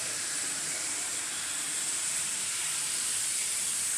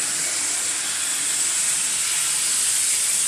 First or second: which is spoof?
first